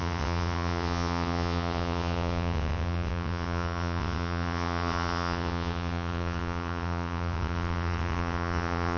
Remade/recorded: remade